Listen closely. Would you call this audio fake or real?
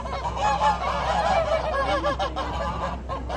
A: real